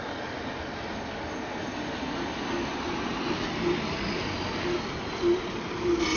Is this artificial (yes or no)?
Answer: no